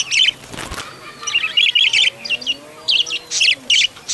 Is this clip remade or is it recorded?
recorded